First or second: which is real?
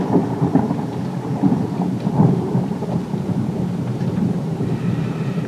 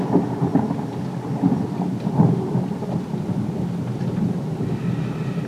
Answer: second